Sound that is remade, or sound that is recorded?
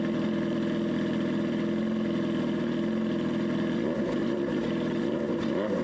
recorded